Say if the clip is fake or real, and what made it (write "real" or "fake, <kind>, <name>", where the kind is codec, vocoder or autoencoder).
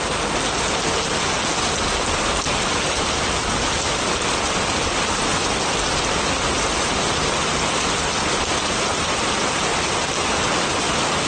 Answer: real